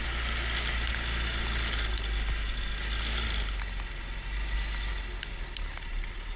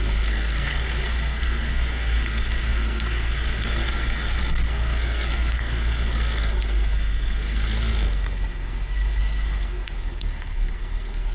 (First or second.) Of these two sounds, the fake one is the second